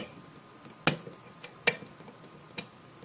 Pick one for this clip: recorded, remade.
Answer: recorded